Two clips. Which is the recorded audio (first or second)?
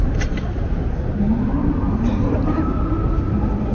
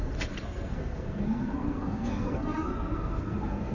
first